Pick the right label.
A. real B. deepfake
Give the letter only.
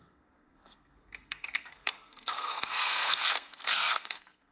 B